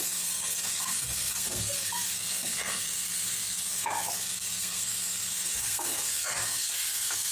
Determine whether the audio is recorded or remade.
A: remade